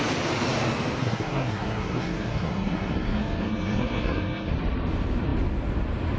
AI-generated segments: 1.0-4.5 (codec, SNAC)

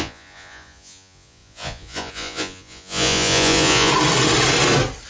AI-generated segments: 0.0-3.9 (vocoder, Vocos)

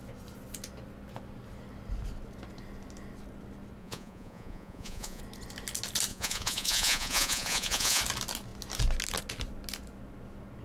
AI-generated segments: 3.8-5.2 (vocoder, Vocos); 6.1-8.0